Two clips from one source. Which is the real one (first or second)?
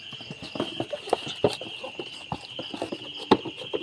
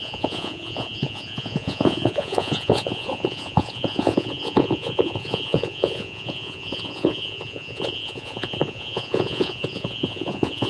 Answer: first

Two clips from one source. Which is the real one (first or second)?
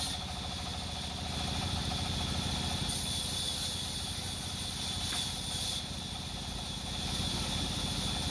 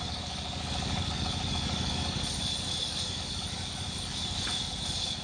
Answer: first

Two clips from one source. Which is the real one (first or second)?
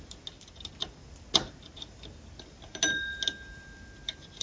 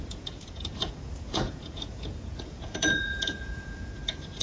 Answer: first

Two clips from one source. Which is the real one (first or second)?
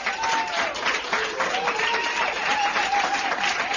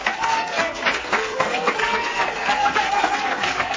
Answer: first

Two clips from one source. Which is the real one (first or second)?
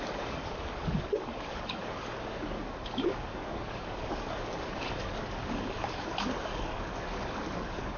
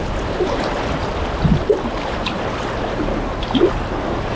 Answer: second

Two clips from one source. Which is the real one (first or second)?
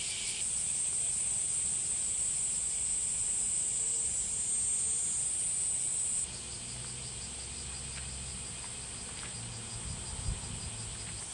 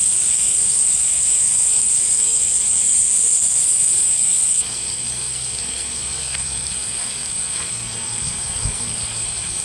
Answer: first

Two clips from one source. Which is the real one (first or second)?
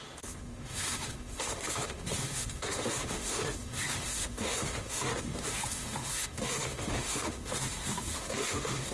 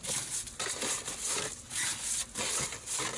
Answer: second